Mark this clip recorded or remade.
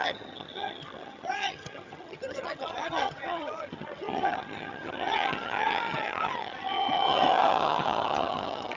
remade